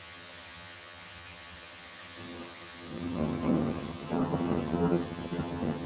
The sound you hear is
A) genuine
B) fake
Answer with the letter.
B